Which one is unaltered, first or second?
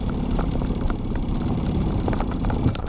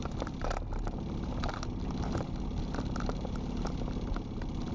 second